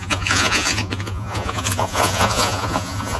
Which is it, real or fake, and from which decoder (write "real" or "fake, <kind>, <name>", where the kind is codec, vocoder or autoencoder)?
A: fake, vocoder, Vocos